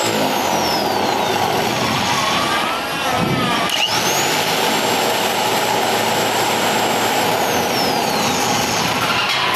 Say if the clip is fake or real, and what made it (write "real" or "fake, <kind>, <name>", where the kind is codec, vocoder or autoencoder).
real